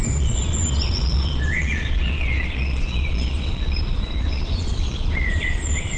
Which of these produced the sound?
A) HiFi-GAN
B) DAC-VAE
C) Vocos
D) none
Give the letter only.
C